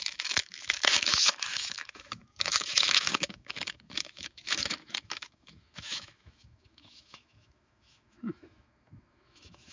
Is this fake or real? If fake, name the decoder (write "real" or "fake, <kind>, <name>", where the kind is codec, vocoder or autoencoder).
fake, autoencoder, DAC-VAE